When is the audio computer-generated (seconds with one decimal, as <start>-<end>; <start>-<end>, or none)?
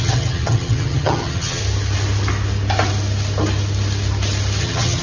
0.0-1.6; 4.6-5.0